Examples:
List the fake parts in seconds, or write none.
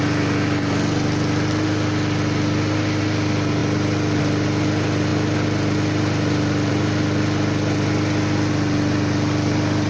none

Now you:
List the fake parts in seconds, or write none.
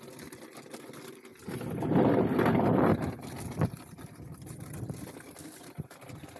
none